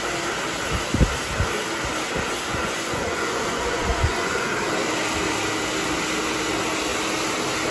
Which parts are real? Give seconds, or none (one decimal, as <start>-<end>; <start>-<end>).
0.0-2.5; 4.5-7.7